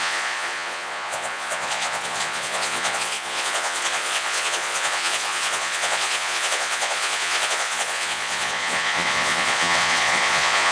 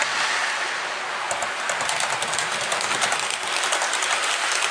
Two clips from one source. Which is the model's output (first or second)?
first